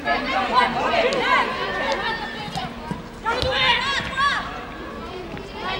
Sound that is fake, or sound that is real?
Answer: real